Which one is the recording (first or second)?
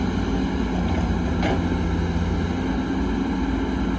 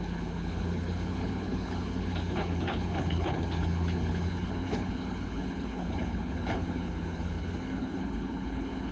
first